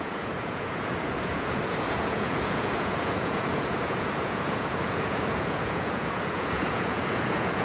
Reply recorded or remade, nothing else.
remade